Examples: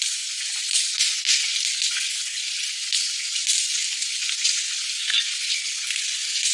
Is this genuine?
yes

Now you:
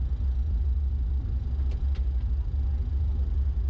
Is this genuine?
yes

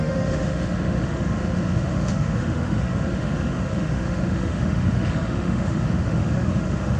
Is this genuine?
no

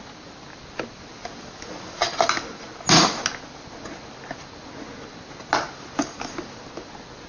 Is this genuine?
yes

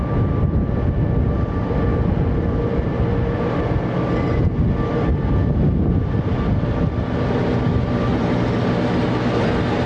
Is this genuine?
yes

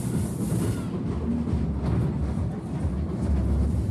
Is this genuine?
yes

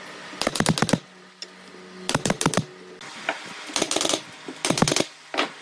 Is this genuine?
yes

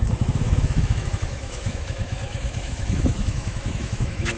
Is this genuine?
no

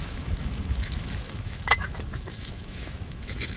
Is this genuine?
no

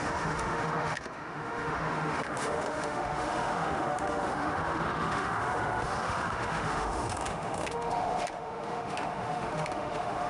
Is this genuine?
no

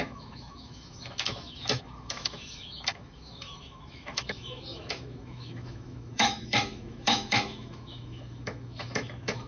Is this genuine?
no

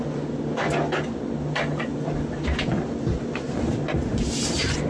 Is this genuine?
yes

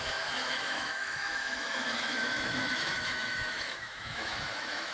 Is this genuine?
no